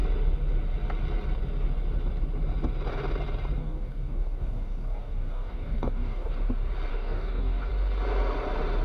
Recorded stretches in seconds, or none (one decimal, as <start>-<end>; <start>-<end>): 0.0-3.6; 6.3-6.9; 7.7-8.8